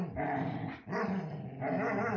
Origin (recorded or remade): recorded